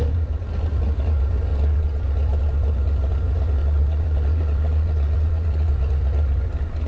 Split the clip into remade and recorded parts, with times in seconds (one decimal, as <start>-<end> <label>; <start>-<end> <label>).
0.0-1.5 recorded; 1.5-2.0 remade; 2.0-3.6 recorded; 3.6-5.7 remade; 5.7-6.9 recorded

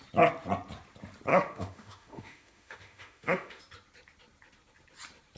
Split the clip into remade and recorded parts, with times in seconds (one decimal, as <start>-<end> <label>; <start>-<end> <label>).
0.0-1.3 recorded; 1.3-3.6 remade; 3.6-5.4 recorded

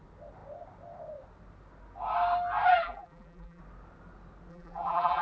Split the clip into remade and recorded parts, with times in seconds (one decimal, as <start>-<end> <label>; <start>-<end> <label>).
0.0-2.7 recorded; 2.7-3.6 remade; 3.6-4.5 recorded; 4.5-5.2 remade

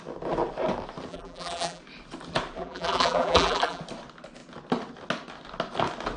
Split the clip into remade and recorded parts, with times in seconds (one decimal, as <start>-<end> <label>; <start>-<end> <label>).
0.0-1.1 recorded; 1.1-1.8 remade; 1.8-2.6 recorded; 2.6-3.8 remade; 3.8-6.2 recorded